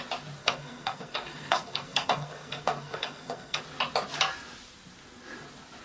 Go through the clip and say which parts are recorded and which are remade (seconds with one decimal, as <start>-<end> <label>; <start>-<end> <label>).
0.0-0.4 recorded; 0.4-3.6 remade; 3.6-5.8 recorded